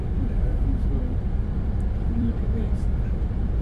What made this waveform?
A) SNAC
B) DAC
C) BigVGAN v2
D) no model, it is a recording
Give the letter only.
C